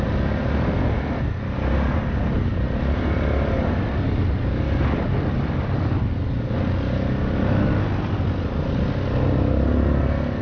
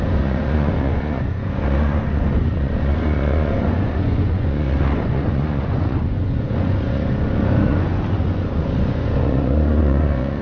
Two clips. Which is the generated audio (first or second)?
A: second